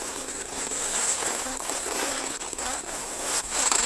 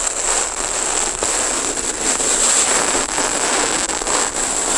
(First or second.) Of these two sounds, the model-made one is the first